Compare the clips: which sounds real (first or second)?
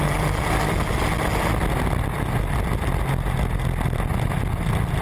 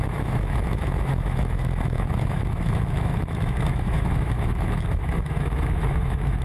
first